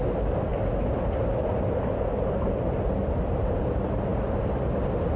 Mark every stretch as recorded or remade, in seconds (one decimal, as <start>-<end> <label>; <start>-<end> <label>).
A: 0.0-5.2 recorded